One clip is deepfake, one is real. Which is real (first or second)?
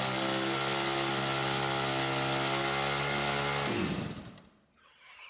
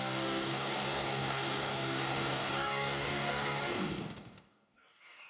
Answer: first